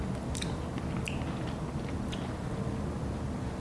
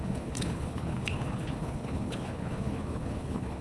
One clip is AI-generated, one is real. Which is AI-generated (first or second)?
second